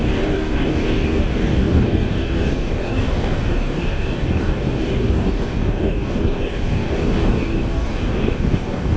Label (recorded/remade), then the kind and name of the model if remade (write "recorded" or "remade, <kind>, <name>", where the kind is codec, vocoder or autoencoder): remade, codec, DAC